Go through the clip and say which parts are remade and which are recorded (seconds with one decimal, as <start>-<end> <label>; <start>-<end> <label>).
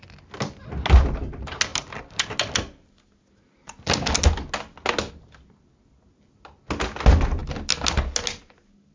0.0-8.9 recorded